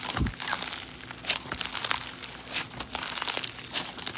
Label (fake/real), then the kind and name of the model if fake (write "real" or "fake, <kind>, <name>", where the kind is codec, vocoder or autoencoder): real